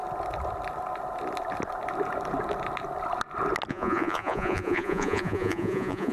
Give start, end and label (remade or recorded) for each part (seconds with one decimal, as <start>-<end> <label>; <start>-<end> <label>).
0.0-3.7 recorded; 3.7-6.1 remade